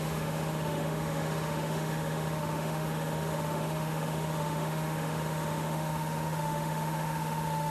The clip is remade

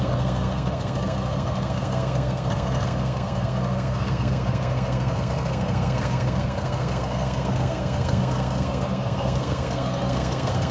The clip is remade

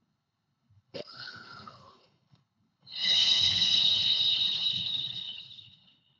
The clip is remade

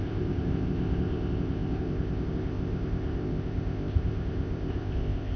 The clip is remade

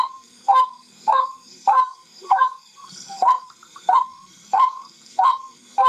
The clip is remade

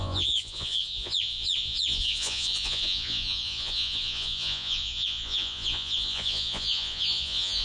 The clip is remade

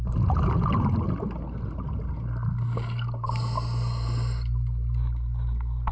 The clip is recorded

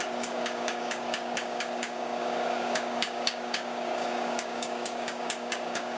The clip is remade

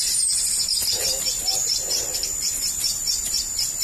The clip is recorded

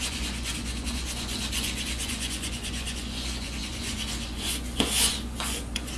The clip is remade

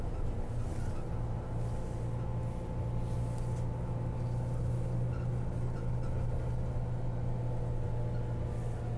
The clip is recorded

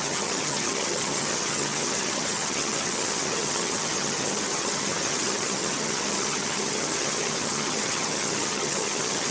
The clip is remade